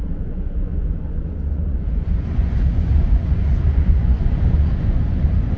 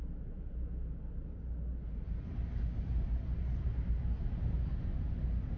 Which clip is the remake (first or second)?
first